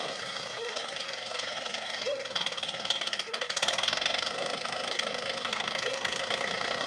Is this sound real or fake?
fake